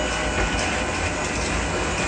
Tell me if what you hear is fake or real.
real